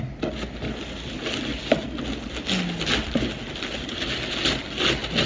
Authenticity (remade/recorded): recorded